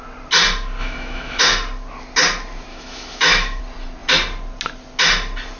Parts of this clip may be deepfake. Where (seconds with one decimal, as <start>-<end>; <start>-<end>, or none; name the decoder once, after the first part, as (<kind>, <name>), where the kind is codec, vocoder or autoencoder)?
0.8-1.4 (autoencoder, DAC-VAE); 2.7-3.6